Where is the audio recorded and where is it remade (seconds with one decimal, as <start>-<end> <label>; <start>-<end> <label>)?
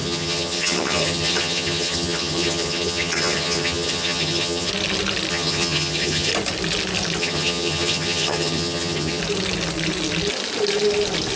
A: 0.0-4.7 remade; 4.7-5.3 recorded; 5.3-6.3 remade; 6.3-7.2 recorded; 7.2-9.2 remade; 9.2-11.4 recorded